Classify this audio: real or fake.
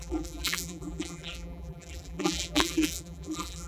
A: fake